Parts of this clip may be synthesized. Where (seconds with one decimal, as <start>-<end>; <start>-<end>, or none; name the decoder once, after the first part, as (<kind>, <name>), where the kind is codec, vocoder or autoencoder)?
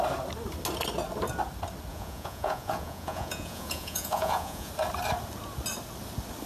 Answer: 1.9-4.7 (vocoder, Vocos)